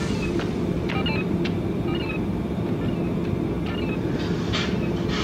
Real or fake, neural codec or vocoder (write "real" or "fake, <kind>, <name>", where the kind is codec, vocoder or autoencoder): fake, vocoder, BigVGAN v2